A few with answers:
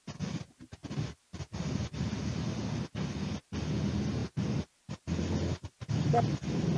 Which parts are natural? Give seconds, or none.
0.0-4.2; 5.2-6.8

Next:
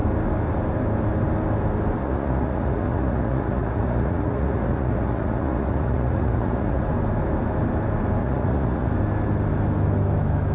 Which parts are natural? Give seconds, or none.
0.0-2.0; 6.8-8.2; 8.9-10.5

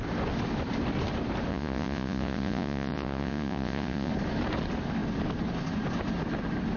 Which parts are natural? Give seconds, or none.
0.0-1.5; 4.1-6.8